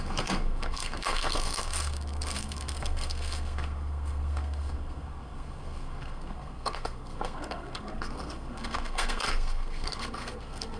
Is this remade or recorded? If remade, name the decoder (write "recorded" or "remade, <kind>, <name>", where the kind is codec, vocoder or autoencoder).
remade, codec, SNAC